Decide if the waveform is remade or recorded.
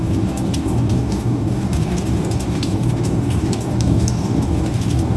remade